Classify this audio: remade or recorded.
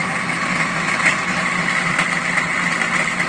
recorded